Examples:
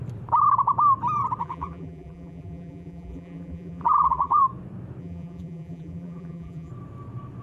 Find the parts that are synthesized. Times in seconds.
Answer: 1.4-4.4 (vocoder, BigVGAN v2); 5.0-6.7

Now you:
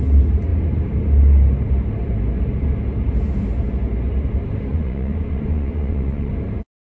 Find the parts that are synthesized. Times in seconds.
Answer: 4.7-6.3 (vocoder, Vocos)

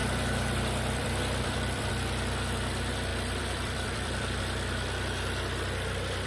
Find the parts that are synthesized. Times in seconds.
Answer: 0.0-1.9 (vocoder, BigVGAN v2); 3.1-4.4

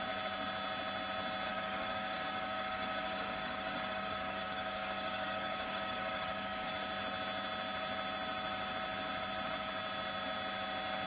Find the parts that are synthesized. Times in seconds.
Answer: 1.5-6.7 (codec, DAC)